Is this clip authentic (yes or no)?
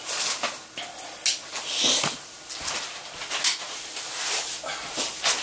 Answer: yes